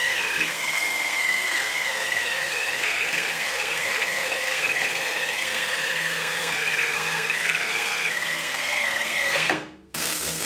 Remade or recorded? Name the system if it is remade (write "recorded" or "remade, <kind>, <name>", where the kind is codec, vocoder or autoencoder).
remade, codec, SNAC